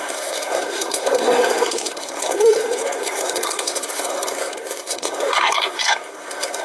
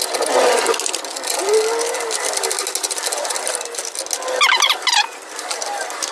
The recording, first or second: second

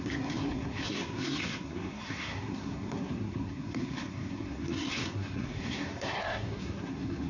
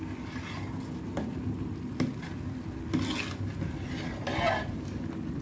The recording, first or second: second